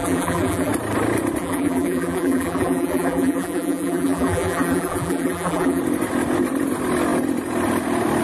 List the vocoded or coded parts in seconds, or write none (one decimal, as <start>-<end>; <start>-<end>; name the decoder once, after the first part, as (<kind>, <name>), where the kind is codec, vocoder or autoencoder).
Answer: 0.0-0.7 (vocoder, BigVGAN v2); 1.4-5.8